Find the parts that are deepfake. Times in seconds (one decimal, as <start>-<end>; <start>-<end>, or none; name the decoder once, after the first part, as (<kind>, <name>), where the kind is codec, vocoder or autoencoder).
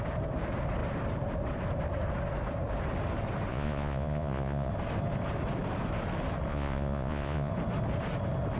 3.5-4.7 (vocoder, Vocos); 6.5-7.5